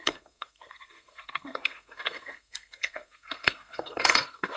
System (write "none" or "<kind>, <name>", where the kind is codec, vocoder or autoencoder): codec, SNAC